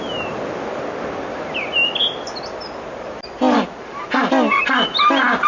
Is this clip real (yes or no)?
yes